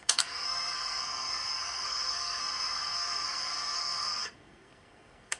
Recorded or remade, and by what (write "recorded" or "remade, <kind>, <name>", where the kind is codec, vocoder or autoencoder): remade, codec, SNAC